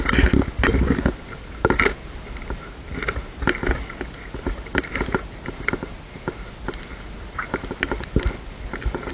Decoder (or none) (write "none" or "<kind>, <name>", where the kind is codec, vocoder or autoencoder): none